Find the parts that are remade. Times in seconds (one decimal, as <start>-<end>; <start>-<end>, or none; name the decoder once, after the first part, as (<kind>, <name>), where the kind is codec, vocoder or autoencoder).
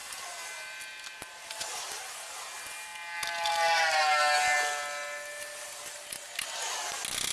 none